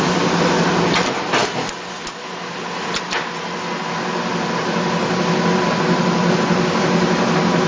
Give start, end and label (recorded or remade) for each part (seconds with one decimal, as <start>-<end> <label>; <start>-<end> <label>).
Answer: 0.0-7.7 recorded